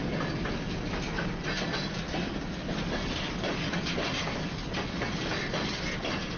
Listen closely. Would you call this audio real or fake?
real